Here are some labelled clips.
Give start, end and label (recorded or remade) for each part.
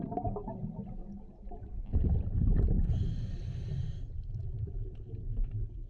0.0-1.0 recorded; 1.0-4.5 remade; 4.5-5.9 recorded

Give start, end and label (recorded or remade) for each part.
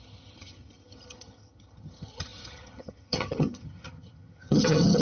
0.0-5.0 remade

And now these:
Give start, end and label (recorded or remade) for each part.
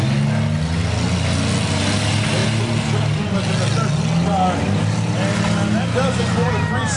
0.0-7.0 recorded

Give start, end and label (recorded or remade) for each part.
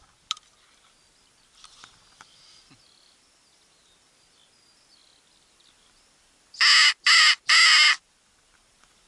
0.0-9.1 recorded